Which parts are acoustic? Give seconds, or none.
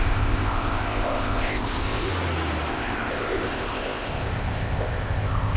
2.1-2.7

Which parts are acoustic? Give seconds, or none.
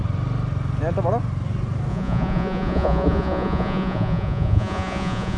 0.0-1.9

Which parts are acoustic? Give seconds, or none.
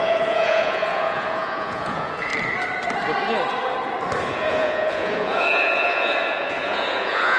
2.3-4.2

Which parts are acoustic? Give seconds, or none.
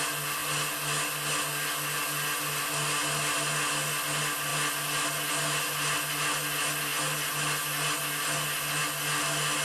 0.0-9.6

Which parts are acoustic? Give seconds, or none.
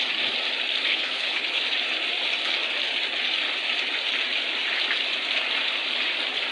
0.0-0.9; 1.6-6.5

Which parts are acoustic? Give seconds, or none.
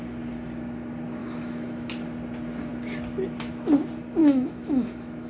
0.0-1.2; 1.9-4.2